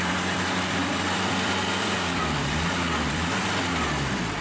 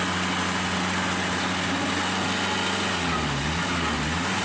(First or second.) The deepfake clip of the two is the first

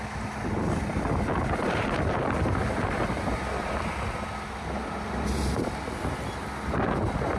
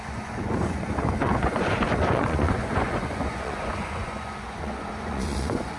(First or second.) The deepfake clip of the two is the second